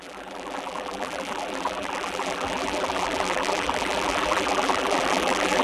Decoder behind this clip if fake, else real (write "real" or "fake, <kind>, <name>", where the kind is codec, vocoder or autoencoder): fake, vocoder, BigVGAN v2